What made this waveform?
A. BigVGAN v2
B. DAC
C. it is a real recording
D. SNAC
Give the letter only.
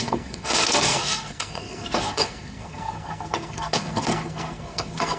D